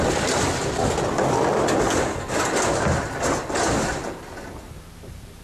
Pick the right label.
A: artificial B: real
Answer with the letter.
B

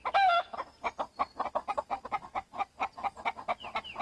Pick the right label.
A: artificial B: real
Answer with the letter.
B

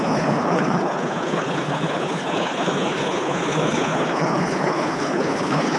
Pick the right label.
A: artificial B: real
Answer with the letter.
A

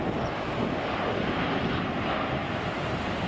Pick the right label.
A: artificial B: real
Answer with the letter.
B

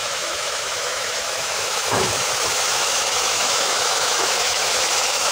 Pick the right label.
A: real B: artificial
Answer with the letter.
B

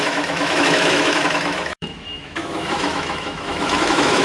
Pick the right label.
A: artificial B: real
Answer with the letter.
A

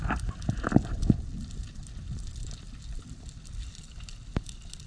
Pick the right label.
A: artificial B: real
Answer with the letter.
B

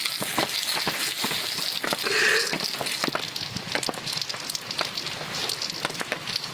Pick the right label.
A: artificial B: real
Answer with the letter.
B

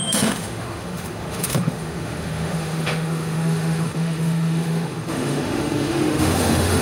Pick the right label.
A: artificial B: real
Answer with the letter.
A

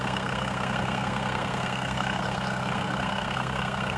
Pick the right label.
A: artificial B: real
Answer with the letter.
A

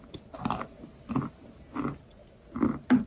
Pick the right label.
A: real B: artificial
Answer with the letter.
A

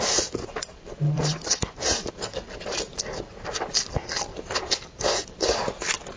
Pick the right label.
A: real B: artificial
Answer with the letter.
A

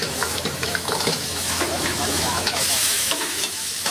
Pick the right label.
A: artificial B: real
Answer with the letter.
A